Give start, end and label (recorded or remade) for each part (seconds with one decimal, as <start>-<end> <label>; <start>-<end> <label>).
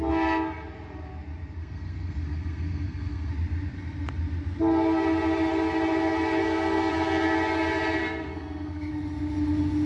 0.0-1.6 recorded; 1.6-3.3 remade; 3.3-6.4 recorded; 6.4-6.9 remade; 6.9-8.0 recorded; 8.0-8.9 remade; 8.9-9.9 recorded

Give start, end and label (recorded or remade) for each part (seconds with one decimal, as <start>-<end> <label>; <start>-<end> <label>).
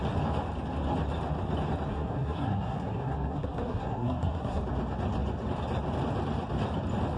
0.0-1.9 recorded; 1.9-4.6 remade; 4.6-7.2 recorded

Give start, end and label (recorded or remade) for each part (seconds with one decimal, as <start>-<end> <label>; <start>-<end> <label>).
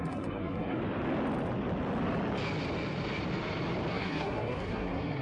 0.0-0.8 remade; 0.8-3.9 recorded; 3.9-5.2 remade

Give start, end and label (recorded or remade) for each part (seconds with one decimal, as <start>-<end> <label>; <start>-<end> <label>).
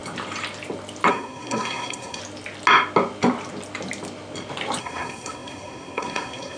0.0-1.1 recorded; 1.1-2.2 remade; 2.2-4.8 recorded; 4.8-6.6 remade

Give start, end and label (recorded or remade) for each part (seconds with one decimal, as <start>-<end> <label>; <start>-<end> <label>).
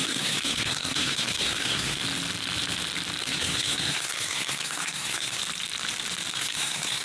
0.0-2.0 remade; 2.0-3.2 recorded; 3.2-5.4 remade; 5.4-6.3 recorded; 6.3-7.0 remade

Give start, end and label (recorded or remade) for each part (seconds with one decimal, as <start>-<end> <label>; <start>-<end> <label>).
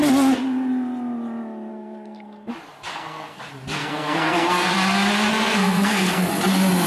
0.0-1.7 recorded; 1.7-2.5 remade; 2.5-2.9 recorded; 2.9-3.4 remade; 3.4-3.8 recorded; 3.8-4.7 remade; 4.7-5.3 recorded; 5.3-6.3 remade; 6.3-6.9 recorded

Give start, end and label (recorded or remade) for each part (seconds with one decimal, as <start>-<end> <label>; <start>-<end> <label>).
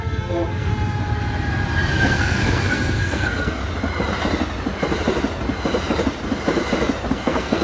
0.0-0.7 remade; 0.7-1.9 recorded; 1.9-3.6 remade; 3.6-7.1 recorded; 7.1-7.6 remade